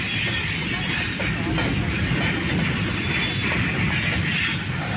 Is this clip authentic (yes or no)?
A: yes